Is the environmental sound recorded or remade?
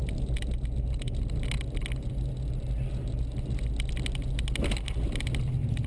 recorded